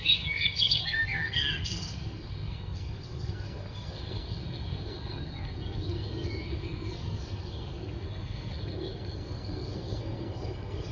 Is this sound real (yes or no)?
no